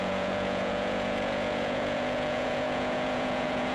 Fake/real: fake